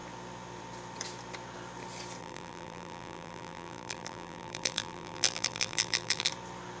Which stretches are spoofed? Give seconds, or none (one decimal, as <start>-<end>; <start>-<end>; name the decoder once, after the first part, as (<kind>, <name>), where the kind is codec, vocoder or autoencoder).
2.2-6.3 (vocoder, BigVGAN v2)